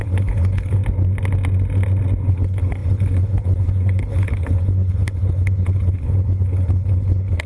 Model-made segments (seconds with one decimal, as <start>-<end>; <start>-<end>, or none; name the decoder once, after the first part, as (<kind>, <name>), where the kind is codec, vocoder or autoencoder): 0.0-0.8 (codec, HILCodec); 2.3-7.5